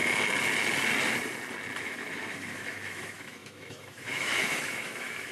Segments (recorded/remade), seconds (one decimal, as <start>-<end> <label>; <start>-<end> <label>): 0.0-1.8 recorded; 1.8-5.3 remade